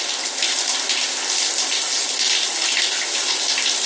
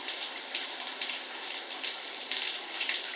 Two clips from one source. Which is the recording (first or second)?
first